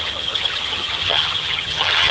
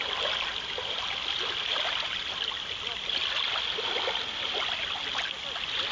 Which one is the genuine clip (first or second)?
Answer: second